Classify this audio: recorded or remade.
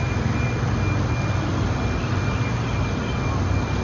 recorded